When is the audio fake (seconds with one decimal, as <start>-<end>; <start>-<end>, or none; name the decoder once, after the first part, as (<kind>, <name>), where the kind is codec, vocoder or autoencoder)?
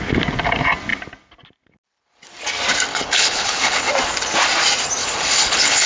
2.9-3.9 (codec, HILCodec); 5.0-5.9